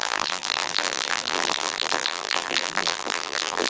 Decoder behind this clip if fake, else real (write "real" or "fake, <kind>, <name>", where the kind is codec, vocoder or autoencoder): fake, vocoder, BigVGAN v2